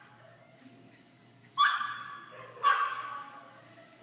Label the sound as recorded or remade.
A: remade